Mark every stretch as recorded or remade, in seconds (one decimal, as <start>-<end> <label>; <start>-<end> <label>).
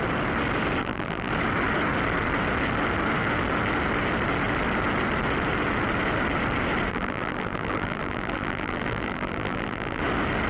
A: 0.0-0.8 recorded; 0.8-1.3 remade; 1.3-6.9 recorded; 6.9-10.0 remade; 10.0-10.5 recorded